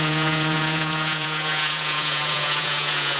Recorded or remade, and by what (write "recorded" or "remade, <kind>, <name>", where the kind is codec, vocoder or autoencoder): remade, vocoder, Vocos